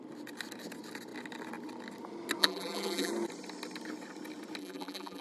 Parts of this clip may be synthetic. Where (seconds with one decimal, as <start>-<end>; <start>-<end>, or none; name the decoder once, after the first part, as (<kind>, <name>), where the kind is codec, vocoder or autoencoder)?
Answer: 2.4-3.1 (vocoder, BigVGAN v2); 4.6-5.2